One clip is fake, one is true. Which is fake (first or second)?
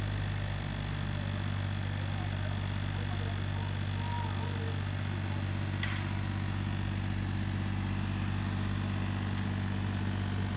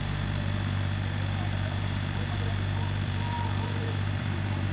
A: second